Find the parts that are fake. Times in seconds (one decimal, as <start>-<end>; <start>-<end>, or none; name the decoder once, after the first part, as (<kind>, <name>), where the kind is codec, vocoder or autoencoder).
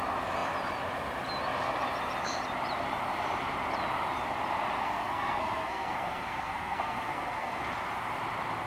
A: 4.8-7.6 (codec, SNAC)